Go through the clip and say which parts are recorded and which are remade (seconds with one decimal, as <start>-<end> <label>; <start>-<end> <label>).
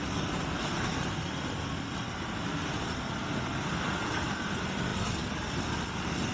0.0-6.3 recorded